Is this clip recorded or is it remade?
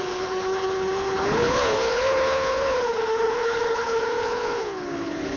remade